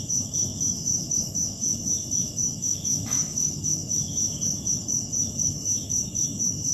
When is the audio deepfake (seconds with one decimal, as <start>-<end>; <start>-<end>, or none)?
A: 0.0-6.7